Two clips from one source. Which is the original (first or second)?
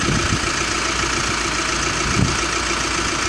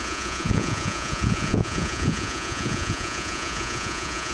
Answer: first